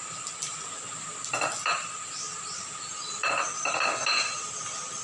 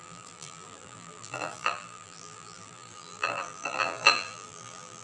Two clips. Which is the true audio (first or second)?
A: first